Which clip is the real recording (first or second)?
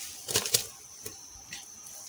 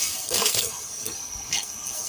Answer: first